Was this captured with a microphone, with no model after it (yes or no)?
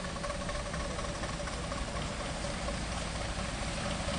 yes